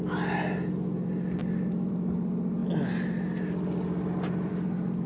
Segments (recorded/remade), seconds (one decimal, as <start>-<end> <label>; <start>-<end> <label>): 0.0-5.1 recorded